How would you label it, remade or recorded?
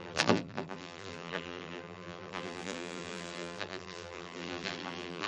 remade